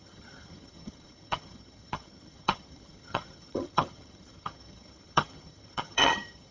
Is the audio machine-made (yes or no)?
yes